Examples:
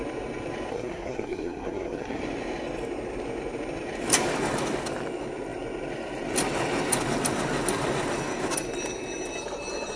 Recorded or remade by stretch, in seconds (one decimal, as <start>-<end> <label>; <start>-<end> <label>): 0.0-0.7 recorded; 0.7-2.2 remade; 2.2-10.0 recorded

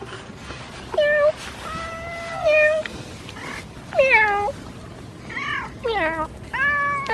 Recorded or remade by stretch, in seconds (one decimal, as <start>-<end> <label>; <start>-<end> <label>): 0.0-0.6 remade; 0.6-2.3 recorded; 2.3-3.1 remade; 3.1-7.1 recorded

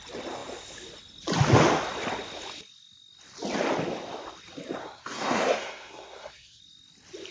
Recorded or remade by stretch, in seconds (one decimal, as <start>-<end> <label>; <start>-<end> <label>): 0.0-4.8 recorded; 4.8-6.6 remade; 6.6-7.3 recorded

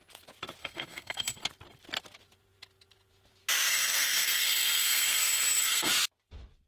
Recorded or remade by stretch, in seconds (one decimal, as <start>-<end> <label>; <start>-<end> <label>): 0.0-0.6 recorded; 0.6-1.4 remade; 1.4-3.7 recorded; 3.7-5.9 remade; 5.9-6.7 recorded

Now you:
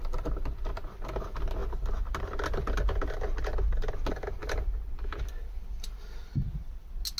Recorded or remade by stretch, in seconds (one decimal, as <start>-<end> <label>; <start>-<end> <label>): 0.0-7.2 recorded